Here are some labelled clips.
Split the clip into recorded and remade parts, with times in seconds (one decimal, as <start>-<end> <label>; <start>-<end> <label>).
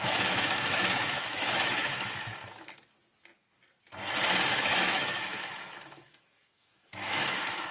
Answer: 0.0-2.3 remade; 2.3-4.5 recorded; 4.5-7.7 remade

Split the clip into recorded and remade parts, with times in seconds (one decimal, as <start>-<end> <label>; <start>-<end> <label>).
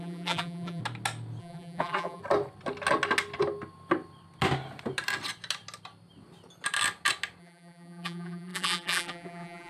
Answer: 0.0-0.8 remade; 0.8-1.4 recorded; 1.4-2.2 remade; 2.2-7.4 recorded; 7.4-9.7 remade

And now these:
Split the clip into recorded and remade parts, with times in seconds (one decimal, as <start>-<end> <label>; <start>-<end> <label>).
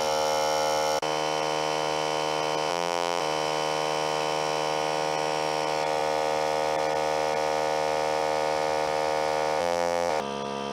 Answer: 0.0-2.7 recorded; 2.7-3.2 remade; 3.2-9.6 recorded; 9.6-10.1 remade; 10.1-10.7 recorded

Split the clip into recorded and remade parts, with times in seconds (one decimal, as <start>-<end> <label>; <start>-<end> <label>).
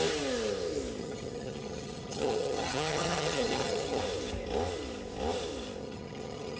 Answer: 0.0-1.0 recorded; 1.0-4.0 remade; 4.0-5.8 recorded; 5.8-6.6 remade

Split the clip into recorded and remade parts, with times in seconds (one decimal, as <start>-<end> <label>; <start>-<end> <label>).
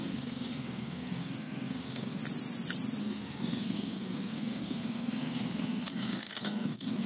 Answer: 0.0-2.2 remade; 2.2-3.0 recorded; 3.0-7.1 remade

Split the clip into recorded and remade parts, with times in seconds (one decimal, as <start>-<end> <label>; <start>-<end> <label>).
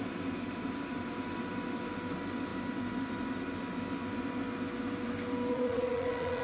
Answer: 0.0-5.5 recorded; 5.5-6.4 remade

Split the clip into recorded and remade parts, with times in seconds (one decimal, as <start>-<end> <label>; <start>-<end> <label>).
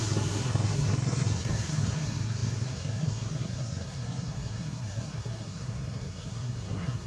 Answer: 0.0-7.1 remade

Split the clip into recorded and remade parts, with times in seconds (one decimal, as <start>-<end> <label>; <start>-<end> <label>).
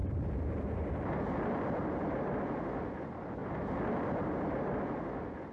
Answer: 0.0-5.5 recorded